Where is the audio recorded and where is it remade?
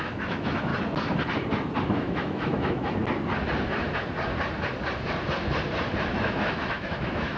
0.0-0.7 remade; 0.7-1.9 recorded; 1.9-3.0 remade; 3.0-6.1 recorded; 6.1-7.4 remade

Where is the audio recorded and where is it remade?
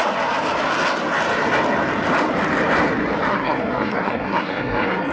0.0-3.3 recorded; 3.3-5.1 remade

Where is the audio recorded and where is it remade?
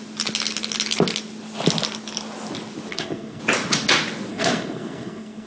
0.0-2.9 recorded; 2.9-3.4 remade; 3.4-4.3 recorded; 4.3-5.5 remade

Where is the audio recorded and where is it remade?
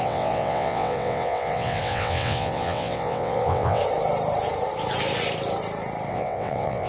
0.0-3.8 remade; 3.8-6.1 recorded; 6.1-6.9 remade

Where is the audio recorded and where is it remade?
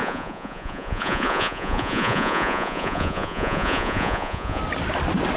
0.0-4.6 remade; 4.6-5.4 recorded